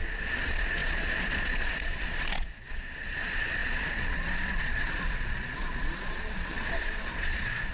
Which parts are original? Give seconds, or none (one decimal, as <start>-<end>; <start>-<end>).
none